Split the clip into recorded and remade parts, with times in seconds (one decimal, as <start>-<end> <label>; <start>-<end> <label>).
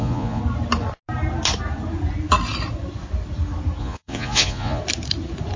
0.0-0.4 remade; 0.4-3.8 recorded; 3.8-4.8 remade; 4.8-5.6 recorded